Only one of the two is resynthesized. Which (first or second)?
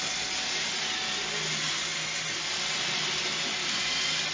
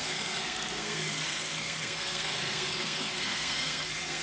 second